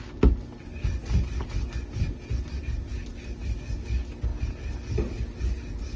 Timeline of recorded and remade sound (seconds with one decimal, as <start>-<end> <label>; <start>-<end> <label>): 0.0-6.0 recorded